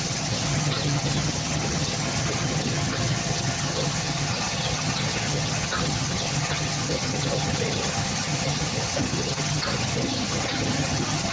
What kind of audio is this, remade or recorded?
remade